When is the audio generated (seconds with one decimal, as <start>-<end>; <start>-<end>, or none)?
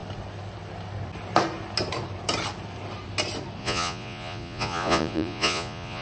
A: 3.6-6.0